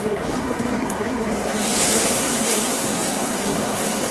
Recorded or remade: remade